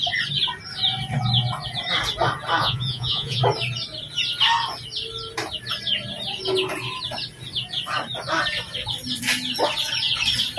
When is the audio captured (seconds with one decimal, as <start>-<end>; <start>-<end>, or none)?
0.0-2.6; 3.4-10.6